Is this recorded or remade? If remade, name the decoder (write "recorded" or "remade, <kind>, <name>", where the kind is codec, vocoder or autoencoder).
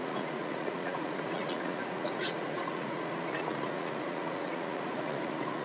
remade, vocoder, Vocos